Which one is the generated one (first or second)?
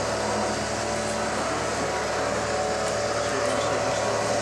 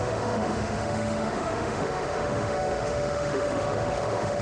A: second